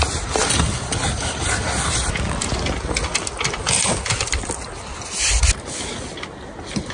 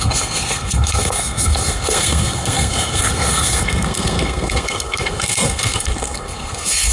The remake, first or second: second